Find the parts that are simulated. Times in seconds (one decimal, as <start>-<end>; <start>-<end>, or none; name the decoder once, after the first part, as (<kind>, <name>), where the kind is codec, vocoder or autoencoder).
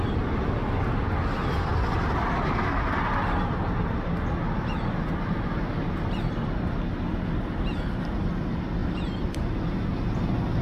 8.8-9.3 (vocoder, BigVGAN v2)